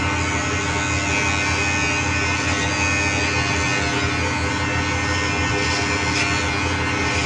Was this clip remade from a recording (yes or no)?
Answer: no